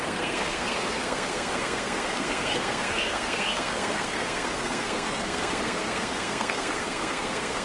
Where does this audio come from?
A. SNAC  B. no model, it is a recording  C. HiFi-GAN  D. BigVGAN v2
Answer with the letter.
A